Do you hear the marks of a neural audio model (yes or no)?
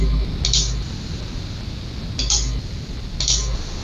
no